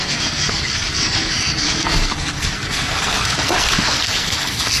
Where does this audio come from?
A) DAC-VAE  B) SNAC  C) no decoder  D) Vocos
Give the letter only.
B